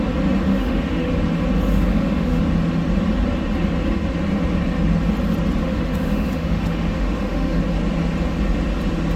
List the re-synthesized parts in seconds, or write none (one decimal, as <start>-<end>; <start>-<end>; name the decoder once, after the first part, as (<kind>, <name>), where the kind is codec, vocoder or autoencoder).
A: 0.5-1.1 (autoencoder, DAC-VAE); 1.9-2.4; 5.6-7.6